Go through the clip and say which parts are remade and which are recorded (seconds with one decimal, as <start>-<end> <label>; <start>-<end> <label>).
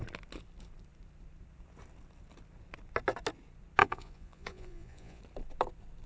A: 0.0-3.8 recorded; 3.8-5.2 remade; 5.2-6.1 recorded